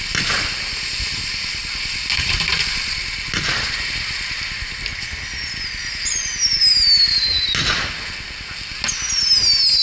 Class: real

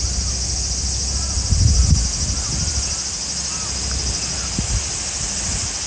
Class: real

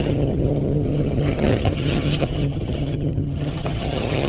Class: fake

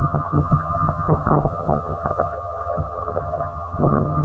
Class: fake